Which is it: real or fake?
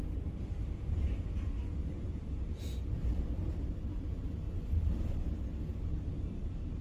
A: real